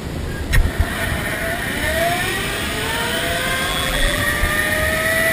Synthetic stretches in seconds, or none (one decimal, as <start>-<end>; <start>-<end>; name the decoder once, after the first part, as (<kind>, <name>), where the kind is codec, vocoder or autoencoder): 3.7-4.2 (vocoder, BigVGAN v2)